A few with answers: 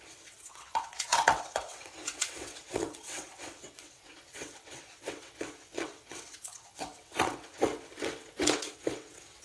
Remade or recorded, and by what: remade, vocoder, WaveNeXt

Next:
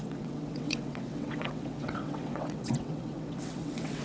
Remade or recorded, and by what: remade, vocoder, WaveNeXt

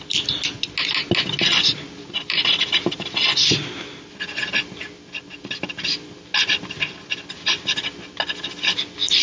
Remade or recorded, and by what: recorded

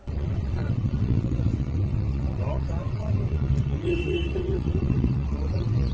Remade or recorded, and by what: remade, vocoder, WaveNeXt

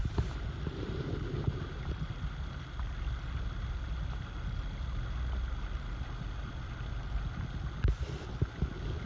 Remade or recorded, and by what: recorded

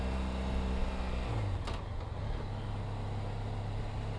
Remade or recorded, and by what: recorded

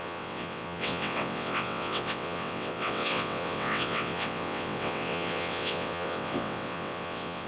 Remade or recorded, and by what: remade, vocoder, WaveNeXt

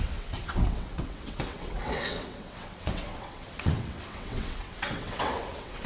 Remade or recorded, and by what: remade, vocoder, WaveNeXt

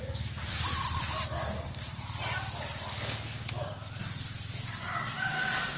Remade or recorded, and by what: recorded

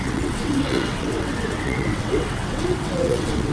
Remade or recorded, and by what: remade, vocoder, WaveNeXt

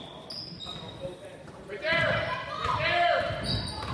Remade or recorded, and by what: recorded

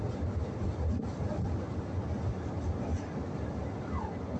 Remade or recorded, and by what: recorded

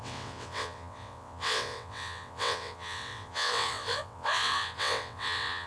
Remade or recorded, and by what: remade, vocoder, WaveNeXt